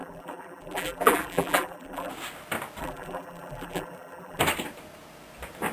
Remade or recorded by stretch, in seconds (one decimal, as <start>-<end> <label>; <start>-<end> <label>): 0.0-2.1 remade; 2.1-2.8 recorded; 2.8-4.4 remade; 4.4-5.7 recorded